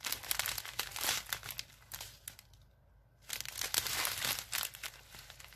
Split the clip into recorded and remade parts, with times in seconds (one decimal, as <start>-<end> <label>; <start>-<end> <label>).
0.0-5.6 recorded